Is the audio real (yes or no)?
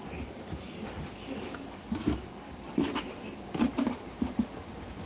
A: yes